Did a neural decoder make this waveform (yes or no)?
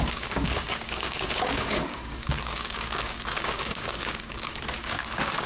yes